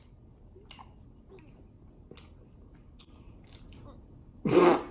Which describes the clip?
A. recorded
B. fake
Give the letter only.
A